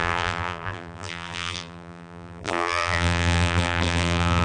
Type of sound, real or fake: fake